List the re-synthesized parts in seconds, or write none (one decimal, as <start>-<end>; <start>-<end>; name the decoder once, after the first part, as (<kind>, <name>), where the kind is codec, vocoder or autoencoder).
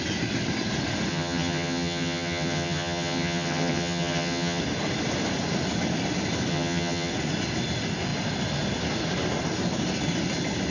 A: 1.1-4.6 (vocoder, HiFi-GAN); 6.5-7.1